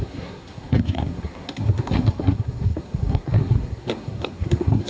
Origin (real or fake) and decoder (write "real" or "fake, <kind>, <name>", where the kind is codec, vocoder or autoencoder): fake, codec, SNAC